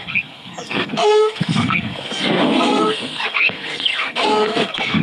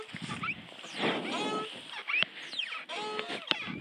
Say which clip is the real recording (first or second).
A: second